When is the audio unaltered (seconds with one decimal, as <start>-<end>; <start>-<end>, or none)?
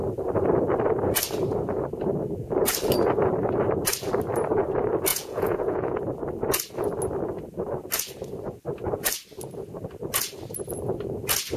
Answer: 0.0-5.1; 6.0-11.6